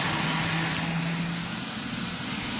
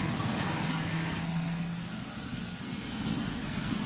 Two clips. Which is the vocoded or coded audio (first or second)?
second